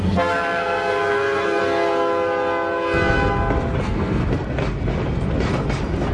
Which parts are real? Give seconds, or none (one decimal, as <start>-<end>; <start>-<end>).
1.6-3.8; 4.2-6.1

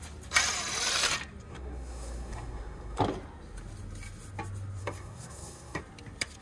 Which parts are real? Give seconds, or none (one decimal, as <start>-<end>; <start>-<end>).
0.0-1.5; 3.0-4.8; 5.8-6.4

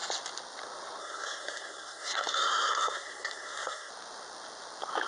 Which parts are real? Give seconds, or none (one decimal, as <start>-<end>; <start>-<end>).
0.0-1.0; 3.9-5.1

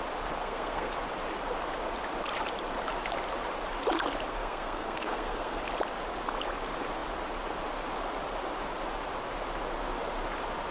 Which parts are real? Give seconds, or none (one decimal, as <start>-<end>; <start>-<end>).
0.0-0.4; 0.9-4.3; 5.6-10.7

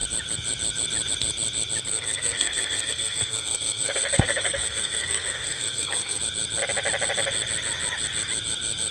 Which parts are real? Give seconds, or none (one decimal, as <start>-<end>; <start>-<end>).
0.0-1.9; 6.2-8.9

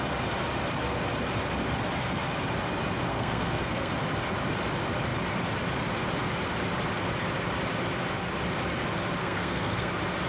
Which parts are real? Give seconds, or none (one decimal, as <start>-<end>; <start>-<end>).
0.0-3.1; 3.9-9.2; 9.9-10.3

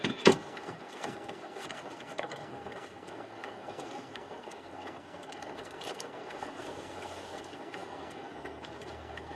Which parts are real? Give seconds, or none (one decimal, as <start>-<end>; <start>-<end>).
none